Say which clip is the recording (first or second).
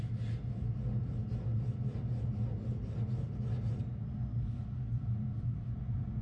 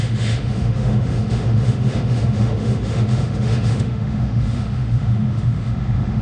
first